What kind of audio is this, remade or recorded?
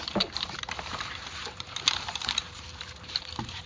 remade